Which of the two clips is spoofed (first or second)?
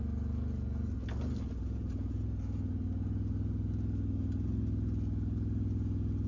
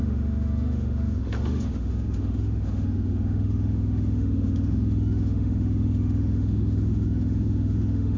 second